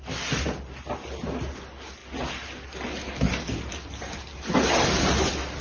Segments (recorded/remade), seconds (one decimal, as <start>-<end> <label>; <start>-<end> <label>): 0.0-5.6 recorded